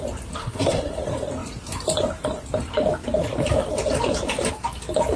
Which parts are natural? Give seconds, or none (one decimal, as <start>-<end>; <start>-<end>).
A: 0.0-0.4; 1.0-5.2